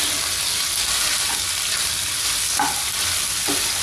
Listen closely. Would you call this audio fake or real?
real